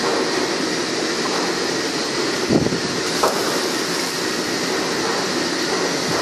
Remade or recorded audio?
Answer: recorded